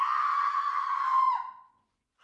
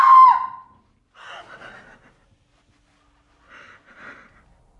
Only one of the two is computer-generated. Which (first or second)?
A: first